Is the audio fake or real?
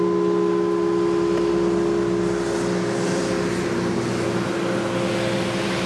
real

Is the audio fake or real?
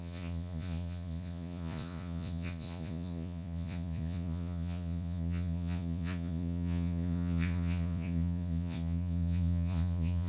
fake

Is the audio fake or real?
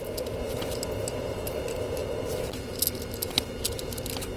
real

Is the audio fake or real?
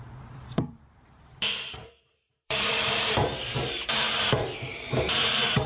fake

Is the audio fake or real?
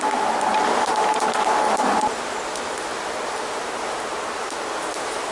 real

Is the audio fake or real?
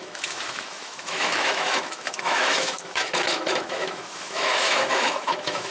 fake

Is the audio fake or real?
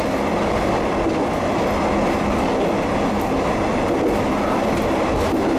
real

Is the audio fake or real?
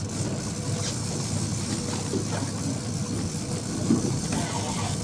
real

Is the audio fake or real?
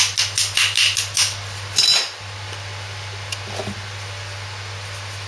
real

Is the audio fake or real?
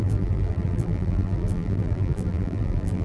fake